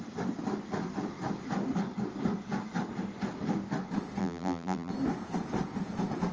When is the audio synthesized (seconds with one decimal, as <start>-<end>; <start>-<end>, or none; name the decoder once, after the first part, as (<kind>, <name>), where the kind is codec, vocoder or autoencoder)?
4.2-4.9 (vocoder, BigVGAN v2)